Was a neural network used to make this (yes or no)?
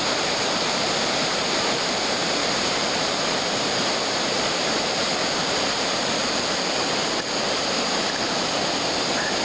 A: yes